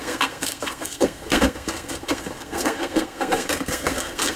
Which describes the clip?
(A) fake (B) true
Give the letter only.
A